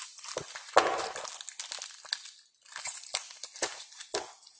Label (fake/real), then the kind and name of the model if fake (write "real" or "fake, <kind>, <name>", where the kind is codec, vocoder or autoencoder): real